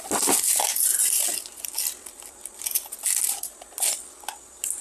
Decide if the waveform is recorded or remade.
recorded